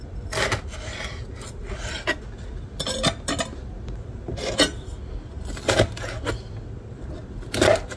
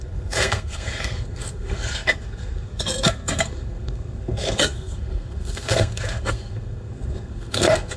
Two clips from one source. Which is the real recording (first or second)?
first